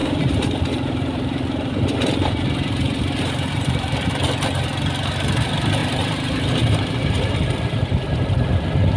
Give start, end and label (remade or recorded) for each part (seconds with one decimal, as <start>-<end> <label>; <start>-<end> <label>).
0.0-4.1 remade; 4.1-5.8 recorded; 5.8-7.3 remade; 7.3-9.0 recorded